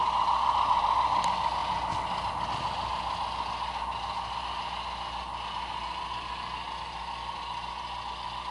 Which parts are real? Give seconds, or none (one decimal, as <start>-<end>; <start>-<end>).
0.0-8.5